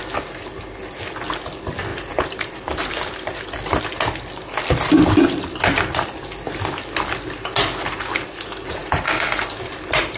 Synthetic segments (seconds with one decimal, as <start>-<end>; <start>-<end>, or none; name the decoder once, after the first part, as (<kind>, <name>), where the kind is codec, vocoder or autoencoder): 1.9-3.8 (vocoder, BigVGAN v2); 8.8-10.2